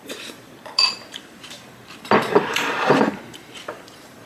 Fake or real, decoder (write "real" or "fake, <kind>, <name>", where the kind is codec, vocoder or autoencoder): fake, vocoder, BigVGAN v2